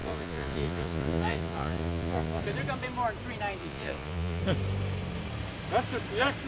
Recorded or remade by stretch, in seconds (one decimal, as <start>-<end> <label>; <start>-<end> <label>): 0.0-2.4 remade; 2.4-3.6 recorded; 3.6-4.4 remade; 4.4-6.5 recorded